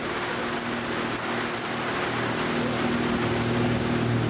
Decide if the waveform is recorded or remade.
recorded